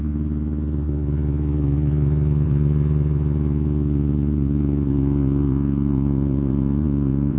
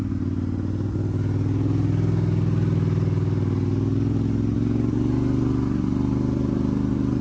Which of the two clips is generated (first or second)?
first